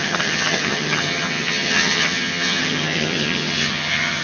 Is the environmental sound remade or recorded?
remade